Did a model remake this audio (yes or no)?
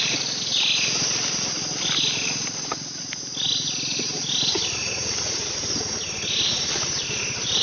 no